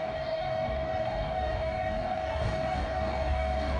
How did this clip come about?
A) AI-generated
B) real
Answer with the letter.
A